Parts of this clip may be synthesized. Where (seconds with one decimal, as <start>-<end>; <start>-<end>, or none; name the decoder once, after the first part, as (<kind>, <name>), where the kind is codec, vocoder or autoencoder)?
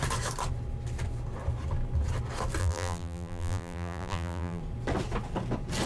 2.6-4.6 (vocoder, BigVGAN v2)